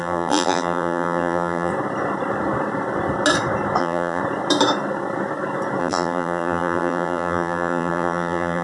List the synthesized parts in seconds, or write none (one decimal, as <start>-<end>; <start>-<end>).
0.0-1.7; 3.8-4.2; 5.8-8.6